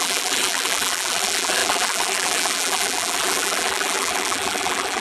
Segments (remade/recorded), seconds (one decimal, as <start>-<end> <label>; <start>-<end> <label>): 0.0-5.0 remade